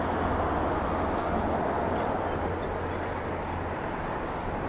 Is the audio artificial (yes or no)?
no